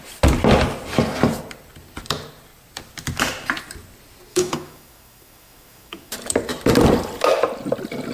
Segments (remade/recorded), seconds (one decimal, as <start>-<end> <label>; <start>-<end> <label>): 0.0-4.3 recorded; 4.3-6.1 remade; 6.1-8.1 recorded

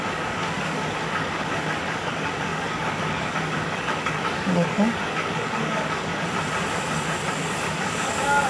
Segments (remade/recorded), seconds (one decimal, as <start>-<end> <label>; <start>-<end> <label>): 0.0-6.1 remade; 6.1-7.3 recorded; 7.3-8.5 remade

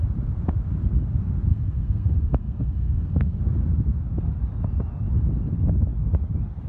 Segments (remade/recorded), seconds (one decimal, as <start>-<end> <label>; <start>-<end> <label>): 0.0-1.5 recorded; 1.5-3.4 remade; 3.4-6.7 recorded

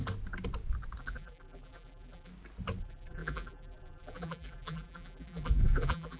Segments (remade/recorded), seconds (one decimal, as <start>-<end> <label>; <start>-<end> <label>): 0.0-1.0 recorded; 1.0-2.3 remade; 2.3-2.8 recorded; 2.8-6.2 remade